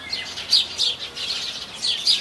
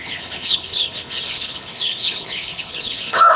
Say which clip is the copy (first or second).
second